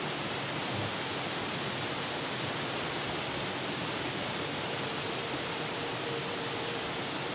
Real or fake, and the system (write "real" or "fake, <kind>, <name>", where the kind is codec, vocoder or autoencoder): real